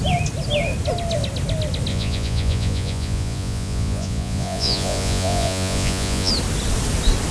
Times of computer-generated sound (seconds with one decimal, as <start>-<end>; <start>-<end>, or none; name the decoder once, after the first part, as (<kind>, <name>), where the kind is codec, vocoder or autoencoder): 1.9-6.3 (vocoder, Vocos)

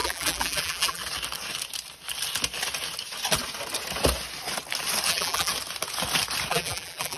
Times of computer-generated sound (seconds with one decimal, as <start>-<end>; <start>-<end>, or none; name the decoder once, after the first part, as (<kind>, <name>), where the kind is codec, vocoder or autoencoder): 0.0-1.0 (vocoder, BigVGAN v2); 5.1-5.5; 6.5-7.2

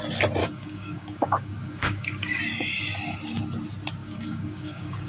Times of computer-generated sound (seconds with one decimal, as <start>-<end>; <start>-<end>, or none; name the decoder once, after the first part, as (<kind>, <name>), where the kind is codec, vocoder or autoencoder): 0.4-2.4 (codec, DAC); 4.0-5.1

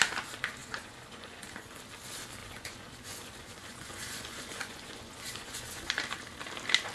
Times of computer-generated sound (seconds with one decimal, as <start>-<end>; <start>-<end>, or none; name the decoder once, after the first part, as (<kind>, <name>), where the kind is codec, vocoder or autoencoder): 0.6-1.8 (vocoder, Vocos); 2.4-6.0